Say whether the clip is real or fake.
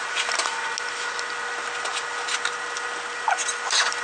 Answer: real